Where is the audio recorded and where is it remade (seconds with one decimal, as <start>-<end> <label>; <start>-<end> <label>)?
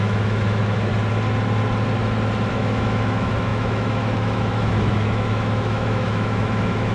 0.0-0.9 remade; 0.9-2.5 recorded; 2.5-6.9 remade